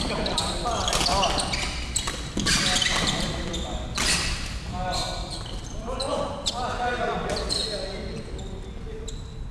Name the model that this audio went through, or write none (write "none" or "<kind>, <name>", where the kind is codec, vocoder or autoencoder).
none